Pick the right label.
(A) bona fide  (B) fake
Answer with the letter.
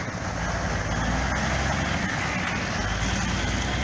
A